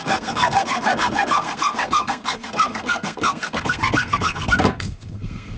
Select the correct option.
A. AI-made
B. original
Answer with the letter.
A